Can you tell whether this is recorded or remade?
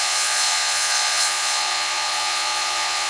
remade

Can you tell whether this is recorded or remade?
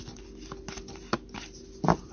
recorded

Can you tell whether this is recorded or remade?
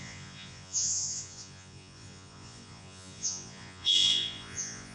remade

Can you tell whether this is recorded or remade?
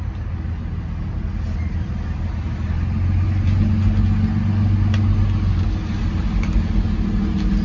recorded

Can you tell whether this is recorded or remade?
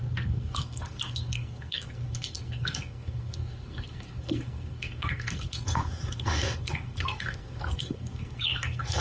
remade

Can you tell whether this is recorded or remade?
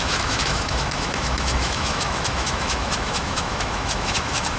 remade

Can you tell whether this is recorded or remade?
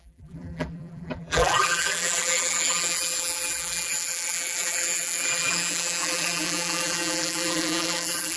remade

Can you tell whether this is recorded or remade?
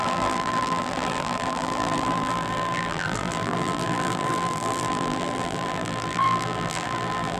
remade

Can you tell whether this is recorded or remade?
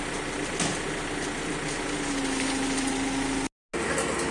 recorded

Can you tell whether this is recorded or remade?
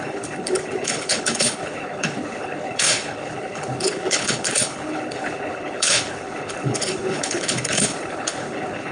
remade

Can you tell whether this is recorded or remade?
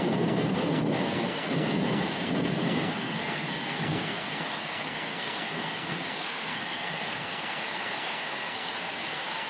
remade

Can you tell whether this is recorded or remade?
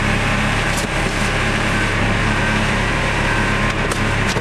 remade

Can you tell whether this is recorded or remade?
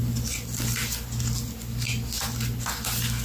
recorded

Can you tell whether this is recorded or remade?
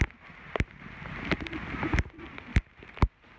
recorded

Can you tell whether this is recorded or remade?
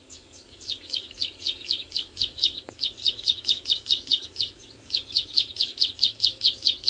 remade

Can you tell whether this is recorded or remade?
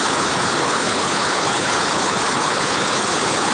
remade